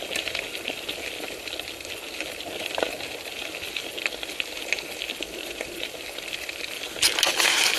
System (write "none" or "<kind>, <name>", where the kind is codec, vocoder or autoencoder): none